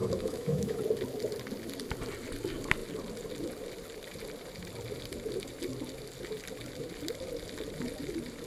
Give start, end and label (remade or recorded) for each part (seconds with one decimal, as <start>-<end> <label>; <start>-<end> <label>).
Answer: 0.0-0.8 remade; 0.8-8.5 recorded